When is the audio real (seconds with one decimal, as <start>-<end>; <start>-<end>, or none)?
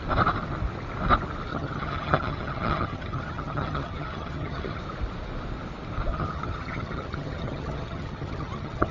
0.0-1.5; 4.8-6.1